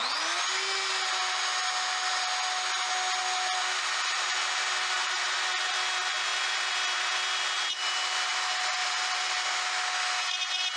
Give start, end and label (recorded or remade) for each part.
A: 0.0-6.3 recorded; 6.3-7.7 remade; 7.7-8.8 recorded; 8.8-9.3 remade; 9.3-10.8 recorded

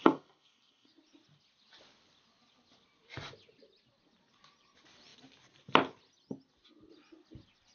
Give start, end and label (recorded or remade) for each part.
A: 0.0-0.9 remade; 0.9-7.7 recorded

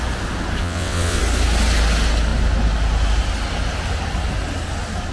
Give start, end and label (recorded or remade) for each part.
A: 0.0-0.6 recorded; 0.6-1.2 remade; 1.2-5.1 recorded

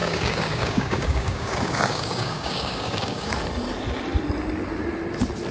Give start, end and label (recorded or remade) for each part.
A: 0.0-3.3 remade; 3.3-5.5 recorded

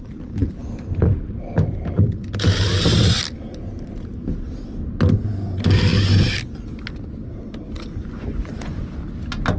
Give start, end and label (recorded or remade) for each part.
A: 0.0-8.0 recorded; 8.0-8.8 remade; 8.8-9.6 recorded

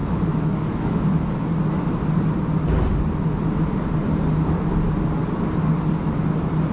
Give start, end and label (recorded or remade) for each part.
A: 0.0-1.3 remade; 1.3-6.7 recorded